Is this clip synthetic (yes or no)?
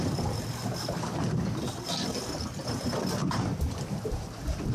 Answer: no